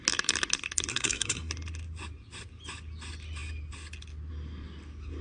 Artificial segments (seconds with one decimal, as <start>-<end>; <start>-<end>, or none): 0.9-1.5